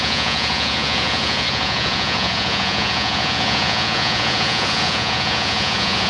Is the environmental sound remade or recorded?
remade